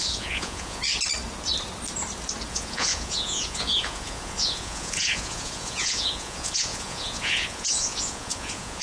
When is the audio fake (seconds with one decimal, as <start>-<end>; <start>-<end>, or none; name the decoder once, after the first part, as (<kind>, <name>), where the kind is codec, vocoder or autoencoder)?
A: 0.0-0.8 (vocoder, Vocos); 2.5-8.8